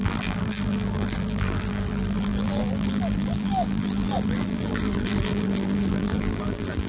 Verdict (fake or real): fake